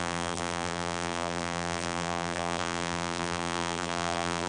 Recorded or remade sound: remade